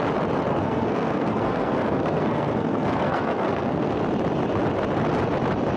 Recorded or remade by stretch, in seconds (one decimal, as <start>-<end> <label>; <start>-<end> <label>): 0.0-0.5 recorded; 0.5-4.0 remade; 4.0-5.8 recorded